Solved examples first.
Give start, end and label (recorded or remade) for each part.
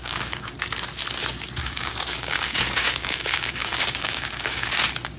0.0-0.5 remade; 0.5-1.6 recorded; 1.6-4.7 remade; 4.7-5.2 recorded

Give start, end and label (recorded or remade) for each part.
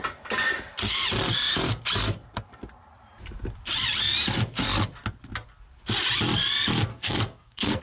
0.0-6.9 recorded; 6.9-7.8 remade